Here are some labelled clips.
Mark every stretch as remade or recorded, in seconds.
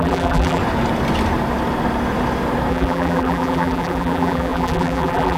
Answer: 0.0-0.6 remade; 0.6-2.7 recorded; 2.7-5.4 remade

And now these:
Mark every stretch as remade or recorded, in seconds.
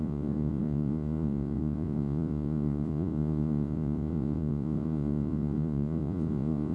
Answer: 0.0-6.7 remade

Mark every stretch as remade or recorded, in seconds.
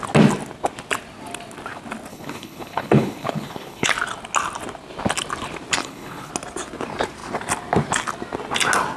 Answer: 0.0-2.1 recorded; 2.1-3.9 remade; 3.9-5.8 recorded; 5.8-6.3 remade; 6.3-9.0 recorded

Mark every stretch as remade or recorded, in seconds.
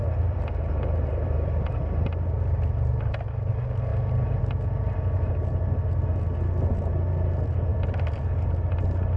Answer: 0.0-1.8 remade; 1.8-7.7 recorded; 7.7-8.2 remade; 8.2-9.2 recorded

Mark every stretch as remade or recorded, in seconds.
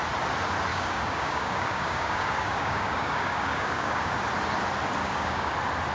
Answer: 0.0-0.7 recorded; 0.7-4.2 remade; 4.2-5.0 recorded; 5.0-5.5 remade; 5.5-5.9 recorded